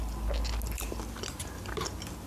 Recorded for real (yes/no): yes